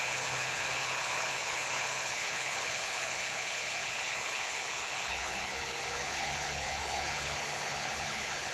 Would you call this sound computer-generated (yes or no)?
yes